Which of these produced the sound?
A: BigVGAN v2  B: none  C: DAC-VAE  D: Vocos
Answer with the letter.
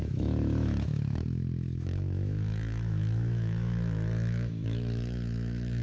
C